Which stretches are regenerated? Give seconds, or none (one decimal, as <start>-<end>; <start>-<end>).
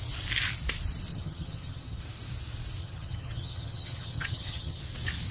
1.1-2.0; 2.8-4.8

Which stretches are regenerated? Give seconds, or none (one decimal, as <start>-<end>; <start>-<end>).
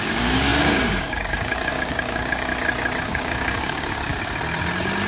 0.0-2.5; 3.0-4.1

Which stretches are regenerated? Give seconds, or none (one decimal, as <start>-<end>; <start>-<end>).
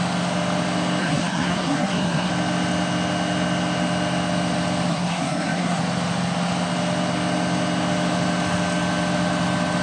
1.0-2.3; 4.9-5.8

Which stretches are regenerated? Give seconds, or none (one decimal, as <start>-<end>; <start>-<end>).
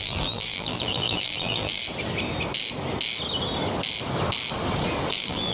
0.0-1.8; 5.1-5.5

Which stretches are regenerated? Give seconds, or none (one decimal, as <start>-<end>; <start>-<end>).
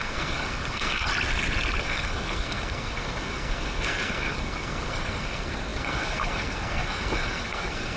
0.0-1.1; 1.8-8.0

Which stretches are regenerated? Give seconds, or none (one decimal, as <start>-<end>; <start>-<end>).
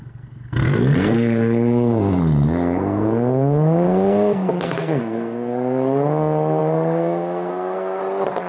0.0-8.0